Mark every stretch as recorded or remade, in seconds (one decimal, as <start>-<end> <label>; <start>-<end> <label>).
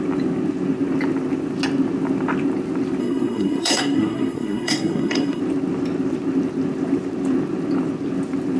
0.0-3.0 recorded; 3.0-5.4 remade; 5.4-8.6 recorded